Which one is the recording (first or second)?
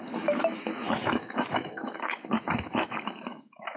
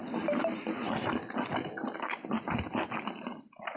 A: second